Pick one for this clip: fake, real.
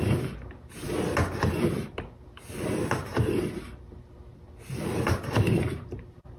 fake